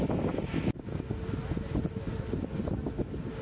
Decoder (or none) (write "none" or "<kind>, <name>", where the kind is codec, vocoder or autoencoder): none